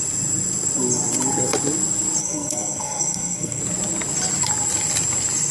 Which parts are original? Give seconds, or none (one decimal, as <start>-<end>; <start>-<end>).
0.0-2.2; 3.6-5.5